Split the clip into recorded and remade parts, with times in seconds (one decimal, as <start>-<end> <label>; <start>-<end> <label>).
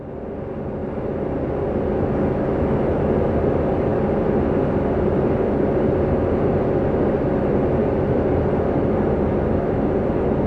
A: 0.0-3.9 recorded; 3.9-5.4 remade; 5.4-10.5 recorded